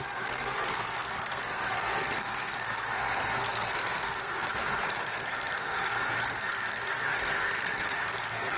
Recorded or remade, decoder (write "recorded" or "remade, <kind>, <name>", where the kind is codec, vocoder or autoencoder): remade, codec, SNAC